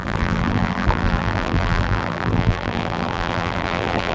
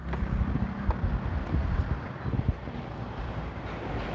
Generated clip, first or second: first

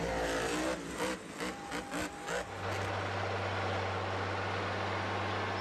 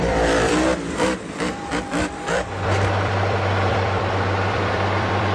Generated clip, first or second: second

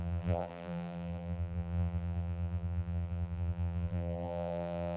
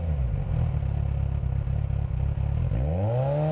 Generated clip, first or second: first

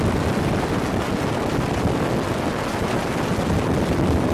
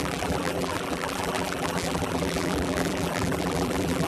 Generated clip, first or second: second